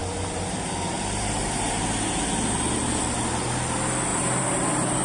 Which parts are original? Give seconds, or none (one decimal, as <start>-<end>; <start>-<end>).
3.0-4.1